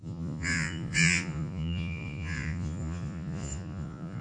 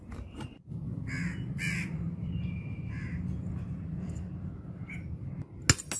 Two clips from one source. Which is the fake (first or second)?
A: first